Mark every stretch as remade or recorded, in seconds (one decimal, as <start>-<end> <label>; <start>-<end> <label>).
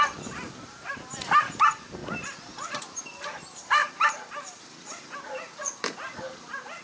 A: 0.0-2.0 remade; 2.0-2.7 recorded; 2.7-6.8 remade